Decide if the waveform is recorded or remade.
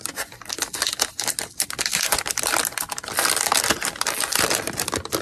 recorded